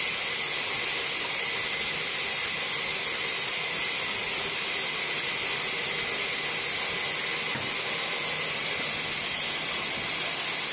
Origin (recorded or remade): recorded